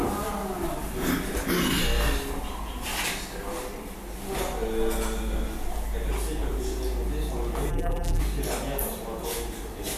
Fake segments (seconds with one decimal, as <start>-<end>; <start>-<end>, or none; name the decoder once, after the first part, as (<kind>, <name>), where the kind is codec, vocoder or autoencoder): 7.7-8.2 (vocoder, BigVGAN v2)